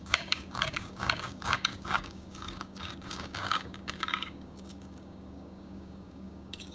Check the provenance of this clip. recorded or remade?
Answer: remade